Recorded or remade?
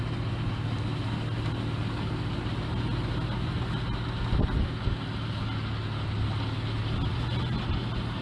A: recorded